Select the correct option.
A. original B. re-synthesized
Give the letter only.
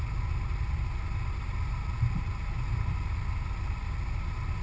A